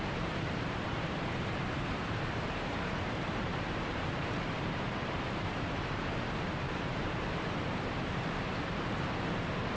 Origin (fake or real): fake